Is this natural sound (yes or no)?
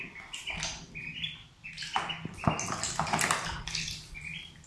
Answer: yes